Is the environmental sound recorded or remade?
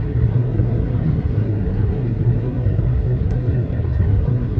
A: remade